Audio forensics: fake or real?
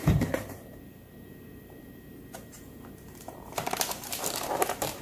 fake